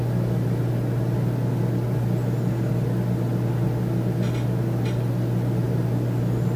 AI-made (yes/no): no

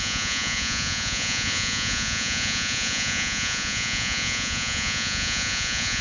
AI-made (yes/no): yes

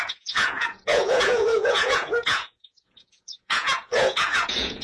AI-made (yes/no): yes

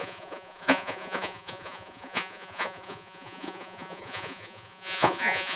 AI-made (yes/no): yes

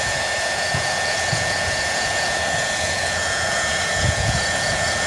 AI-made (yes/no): yes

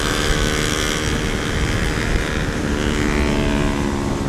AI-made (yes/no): no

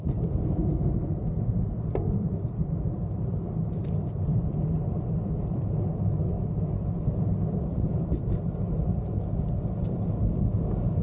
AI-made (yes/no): no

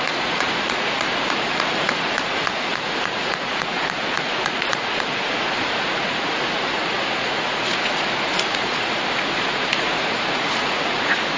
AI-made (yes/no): yes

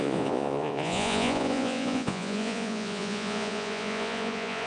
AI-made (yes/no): yes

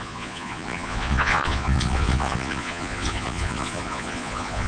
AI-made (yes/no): yes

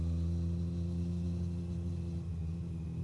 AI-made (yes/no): no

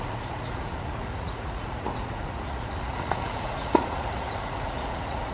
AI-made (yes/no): yes